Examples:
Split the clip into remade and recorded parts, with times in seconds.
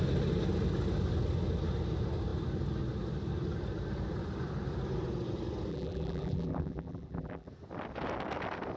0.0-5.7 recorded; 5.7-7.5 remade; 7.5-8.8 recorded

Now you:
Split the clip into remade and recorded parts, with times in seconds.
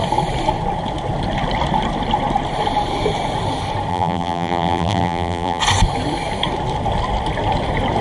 0.0-3.9 recorded; 3.9-5.6 remade; 5.6-8.0 recorded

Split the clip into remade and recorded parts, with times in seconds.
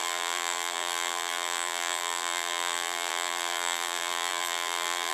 0.0-5.1 remade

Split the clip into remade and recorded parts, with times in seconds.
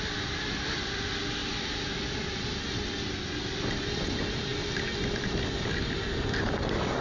0.0-7.0 recorded